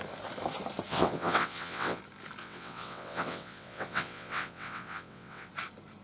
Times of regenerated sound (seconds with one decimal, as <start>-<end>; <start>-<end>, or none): 0.9-2.0; 2.4-5.5